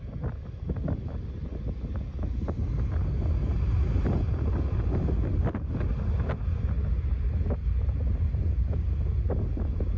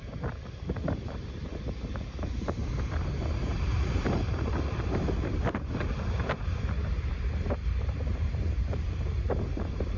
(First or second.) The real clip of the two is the first